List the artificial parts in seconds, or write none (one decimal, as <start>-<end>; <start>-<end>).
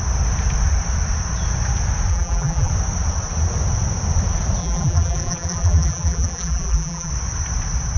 2.1-2.7; 4.6-7.1